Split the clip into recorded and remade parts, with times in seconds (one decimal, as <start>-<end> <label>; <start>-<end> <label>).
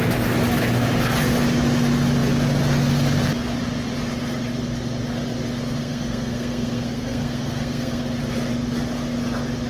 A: 0.0-5.8 recorded; 5.8-8.0 remade; 8.0-9.7 recorded